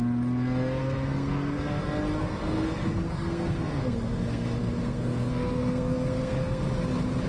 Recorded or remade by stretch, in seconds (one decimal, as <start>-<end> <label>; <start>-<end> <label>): 0.0-0.8 recorded; 0.8-1.7 remade; 1.7-2.2 recorded; 2.2-6.6 remade; 6.6-7.3 recorded